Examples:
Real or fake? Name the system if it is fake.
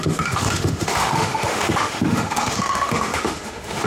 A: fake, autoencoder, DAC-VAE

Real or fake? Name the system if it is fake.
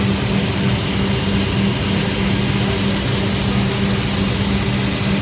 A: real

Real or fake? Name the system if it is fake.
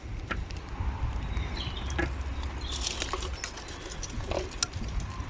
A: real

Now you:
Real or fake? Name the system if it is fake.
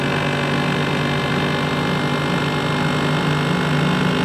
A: real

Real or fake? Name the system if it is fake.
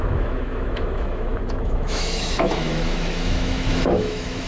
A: fake, autoencoder, DAC-VAE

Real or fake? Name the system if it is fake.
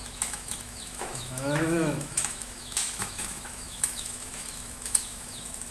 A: fake, autoencoder, DAC-VAE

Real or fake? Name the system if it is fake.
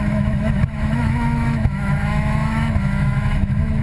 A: fake, autoencoder, DAC-VAE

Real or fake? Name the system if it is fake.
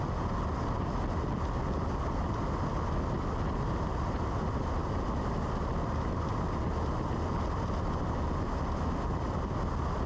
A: real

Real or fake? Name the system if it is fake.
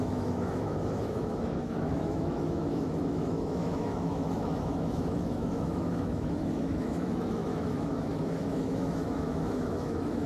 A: fake, autoencoder, DAC-VAE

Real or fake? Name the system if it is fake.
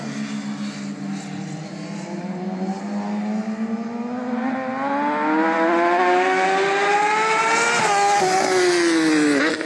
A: real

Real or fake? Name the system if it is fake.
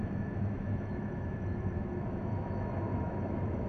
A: fake, autoencoder, DAC-VAE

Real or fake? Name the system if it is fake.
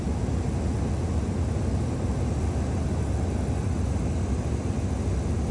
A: real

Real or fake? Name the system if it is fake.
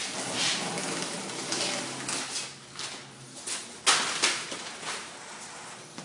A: real